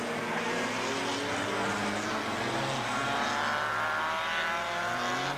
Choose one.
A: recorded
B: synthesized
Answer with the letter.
A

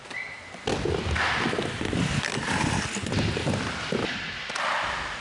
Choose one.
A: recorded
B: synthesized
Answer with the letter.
A